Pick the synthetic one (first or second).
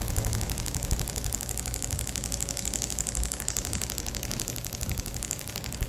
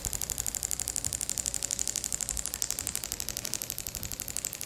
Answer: first